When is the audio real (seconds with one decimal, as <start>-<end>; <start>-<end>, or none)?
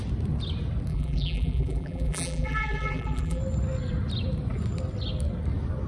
0.0-0.9; 3.4-5.9